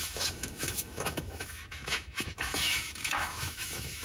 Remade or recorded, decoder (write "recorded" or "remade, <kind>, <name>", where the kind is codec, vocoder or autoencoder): remade, autoencoder, DAC-VAE